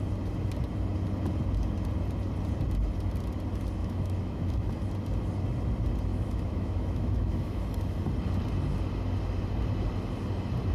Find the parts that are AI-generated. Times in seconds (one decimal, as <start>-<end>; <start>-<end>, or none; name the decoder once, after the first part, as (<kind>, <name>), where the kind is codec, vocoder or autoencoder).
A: 3.8-4.7 (autoencoder, DAC-VAE); 6.1-7.6